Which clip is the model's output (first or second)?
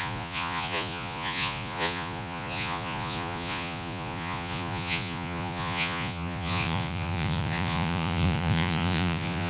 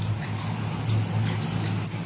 first